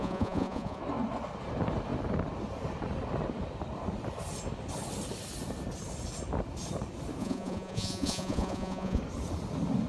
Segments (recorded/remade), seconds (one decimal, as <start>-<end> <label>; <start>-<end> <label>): 0.0-0.8 remade; 0.8-7.2 recorded; 7.2-9.0 remade; 9.0-9.9 recorded